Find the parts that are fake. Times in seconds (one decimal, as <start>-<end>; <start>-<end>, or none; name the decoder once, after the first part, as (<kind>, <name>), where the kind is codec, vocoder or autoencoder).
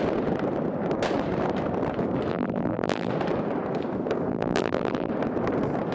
2.3-3.1 (vocoder, BigVGAN v2); 4.3-5.1